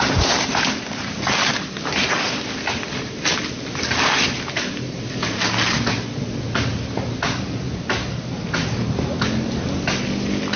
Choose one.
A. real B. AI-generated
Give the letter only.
A